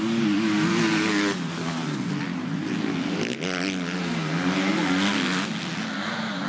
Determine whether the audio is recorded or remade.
recorded